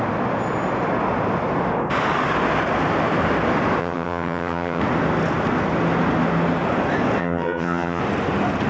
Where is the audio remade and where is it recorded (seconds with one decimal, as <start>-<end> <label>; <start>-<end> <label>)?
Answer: 0.0-3.8 recorded; 3.8-4.8 remade; 4.8-7.2 recorded; 7.2-8.0 remade; 8.0-8.7 recorded